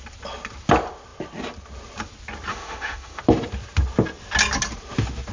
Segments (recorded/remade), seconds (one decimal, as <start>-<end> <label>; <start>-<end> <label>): 0.0-2.5 recorded; 2.5-3.2 remade; 3.2-5.3 recorded